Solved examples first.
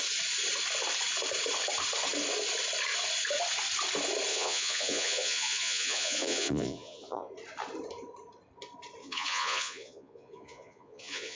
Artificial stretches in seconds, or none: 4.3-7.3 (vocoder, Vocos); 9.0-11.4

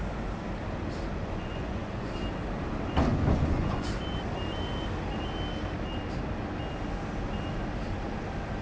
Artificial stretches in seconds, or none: 1.2-2.1 (vocoder, Vocos); 3.1-3.9

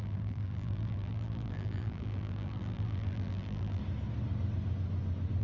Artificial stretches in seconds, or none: 0.0-3.8 (vocoder, BigVGAN v2)

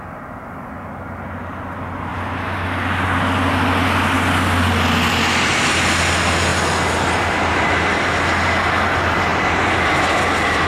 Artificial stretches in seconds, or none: none

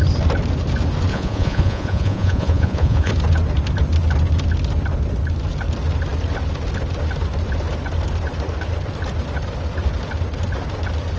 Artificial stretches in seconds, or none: 1.1-3.1 (vocoder, Vocos)